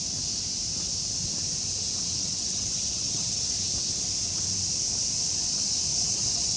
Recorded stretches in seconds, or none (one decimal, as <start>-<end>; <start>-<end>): 0.0-2.2; 3.6-5.9